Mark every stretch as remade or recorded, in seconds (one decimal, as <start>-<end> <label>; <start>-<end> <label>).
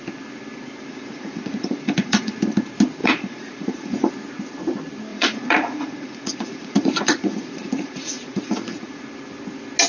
0.0-0.9 recorded; 0.9-2.3 remade; 2.3-3.0 recorded; 3.0-4.1 remade; 4.1-5.1 recorded; 5.1-9.0 remade; 9.0-9.9 recorded